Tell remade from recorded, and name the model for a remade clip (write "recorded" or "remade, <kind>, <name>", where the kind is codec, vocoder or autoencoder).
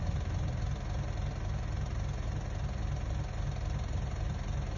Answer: recorded